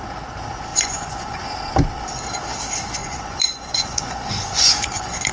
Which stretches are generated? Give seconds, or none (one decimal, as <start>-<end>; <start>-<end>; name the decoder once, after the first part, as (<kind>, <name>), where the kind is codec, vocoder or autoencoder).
0.7-1.4 (vocoder, Vocos); 3.0-5.3